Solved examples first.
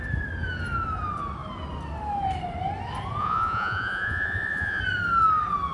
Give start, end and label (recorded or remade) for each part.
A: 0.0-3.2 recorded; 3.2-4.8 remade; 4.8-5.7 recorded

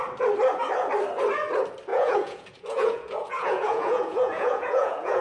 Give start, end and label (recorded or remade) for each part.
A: 0.0-1.9 recorded; 1.9-5.2 remade